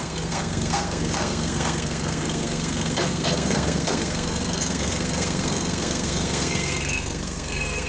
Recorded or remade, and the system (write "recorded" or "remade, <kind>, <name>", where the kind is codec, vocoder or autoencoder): remade, codec, SNAC